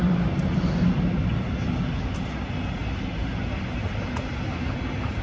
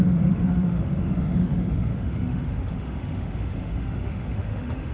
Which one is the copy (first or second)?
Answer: second